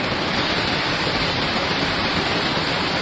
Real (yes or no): no